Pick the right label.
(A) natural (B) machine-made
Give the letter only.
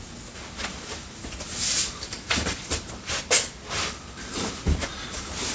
A